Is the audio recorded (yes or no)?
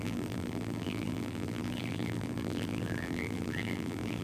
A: no